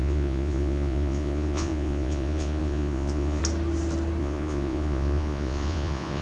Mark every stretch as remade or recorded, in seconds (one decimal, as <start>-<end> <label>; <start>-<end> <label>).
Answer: 0.0-3.4 remade; 3.4-4.2 recorded; 4.2-6.2 remade